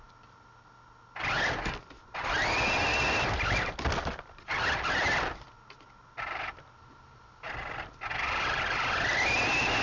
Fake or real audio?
real